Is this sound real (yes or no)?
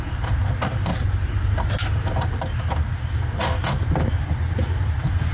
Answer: yes